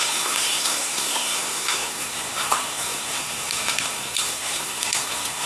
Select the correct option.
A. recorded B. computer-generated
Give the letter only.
B